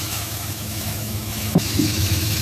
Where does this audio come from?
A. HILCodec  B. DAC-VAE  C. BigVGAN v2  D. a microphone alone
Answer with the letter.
B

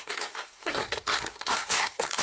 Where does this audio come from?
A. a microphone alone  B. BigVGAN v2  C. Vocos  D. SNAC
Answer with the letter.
D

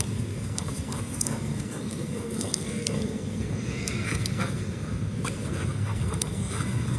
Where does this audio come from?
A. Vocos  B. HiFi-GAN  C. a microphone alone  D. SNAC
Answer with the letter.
D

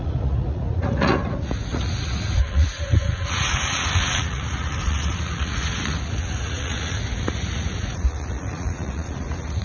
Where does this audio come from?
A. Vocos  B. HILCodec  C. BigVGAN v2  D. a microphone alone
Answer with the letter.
A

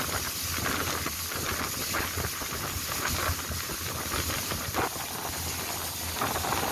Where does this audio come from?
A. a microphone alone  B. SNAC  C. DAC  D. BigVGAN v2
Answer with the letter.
A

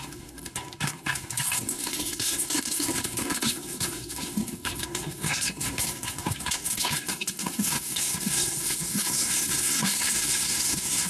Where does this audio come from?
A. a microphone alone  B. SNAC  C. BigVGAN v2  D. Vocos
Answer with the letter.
B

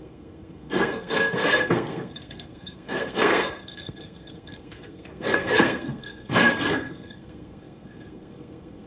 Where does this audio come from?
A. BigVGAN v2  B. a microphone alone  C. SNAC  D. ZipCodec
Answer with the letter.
C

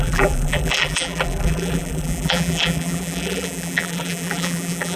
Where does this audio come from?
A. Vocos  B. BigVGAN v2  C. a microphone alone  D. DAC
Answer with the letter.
B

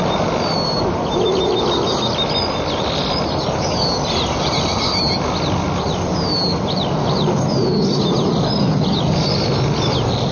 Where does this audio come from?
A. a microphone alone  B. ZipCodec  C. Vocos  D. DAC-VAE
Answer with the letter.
A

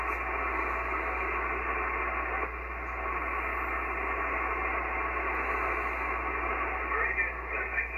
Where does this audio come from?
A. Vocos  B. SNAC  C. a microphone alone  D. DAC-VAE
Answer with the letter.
C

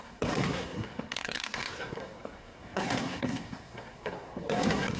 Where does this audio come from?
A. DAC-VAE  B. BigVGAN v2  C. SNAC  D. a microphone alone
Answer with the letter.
C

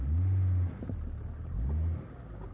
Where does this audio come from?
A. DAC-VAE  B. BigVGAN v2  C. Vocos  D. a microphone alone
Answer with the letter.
D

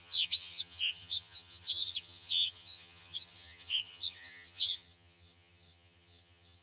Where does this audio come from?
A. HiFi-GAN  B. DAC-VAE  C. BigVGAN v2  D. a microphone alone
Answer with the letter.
A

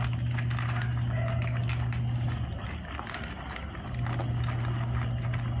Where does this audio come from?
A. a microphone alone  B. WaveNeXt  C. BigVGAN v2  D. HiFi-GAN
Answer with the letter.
A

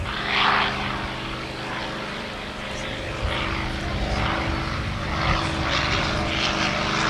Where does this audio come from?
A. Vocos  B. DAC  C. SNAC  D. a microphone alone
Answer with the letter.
D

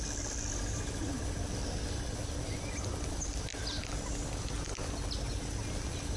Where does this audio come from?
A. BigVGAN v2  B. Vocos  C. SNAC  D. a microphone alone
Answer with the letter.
D